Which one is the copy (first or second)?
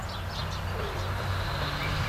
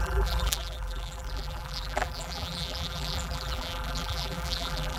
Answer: second